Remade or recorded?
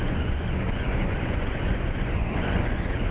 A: remade